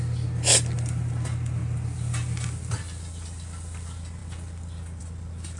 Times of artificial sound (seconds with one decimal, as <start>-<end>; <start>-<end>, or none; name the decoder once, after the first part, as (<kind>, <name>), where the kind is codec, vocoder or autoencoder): none